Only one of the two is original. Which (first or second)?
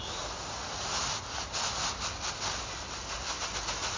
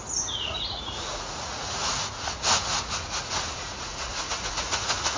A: first